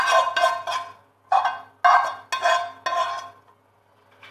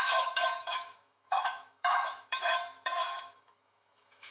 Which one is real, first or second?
first